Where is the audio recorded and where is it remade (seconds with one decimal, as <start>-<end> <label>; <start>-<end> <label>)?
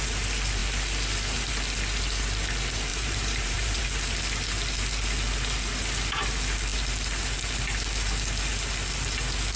0.0-2.9 recorded; 2.9-3.8 remade; 3.8-9.6 recorded